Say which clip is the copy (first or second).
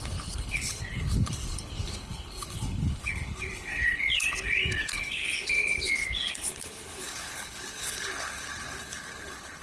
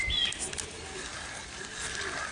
first